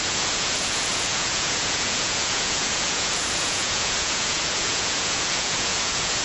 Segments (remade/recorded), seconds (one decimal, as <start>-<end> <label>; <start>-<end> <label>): 0.0-6.2 remade